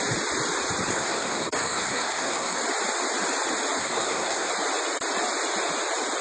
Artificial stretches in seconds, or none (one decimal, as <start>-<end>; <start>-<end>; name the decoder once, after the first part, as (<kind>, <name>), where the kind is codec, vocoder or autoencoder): 0.9-2.6 (codec, SNAC); 3.8-4.5